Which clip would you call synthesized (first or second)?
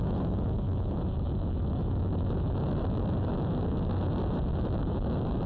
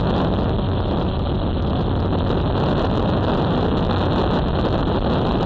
first